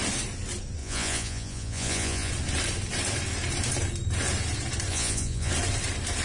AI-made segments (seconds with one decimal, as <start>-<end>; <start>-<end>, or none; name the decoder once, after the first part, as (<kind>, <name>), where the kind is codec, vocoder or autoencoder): 0.8-2.3 (vocoder, Vocos); 4.9-5.5